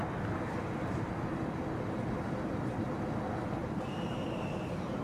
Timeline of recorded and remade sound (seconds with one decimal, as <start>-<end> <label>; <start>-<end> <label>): 0.0-3.6 recorded; 3.6-5.0 remade